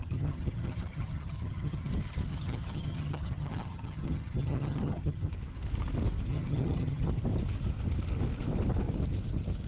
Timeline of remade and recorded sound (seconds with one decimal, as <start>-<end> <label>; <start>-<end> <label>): 0.0-1.9 remade; 1.9-2.3 recorded; 2.3-5.3 remade; 5.3-6.3 recorded; 6.3-7.1 remade; 7.1-9.7 recorded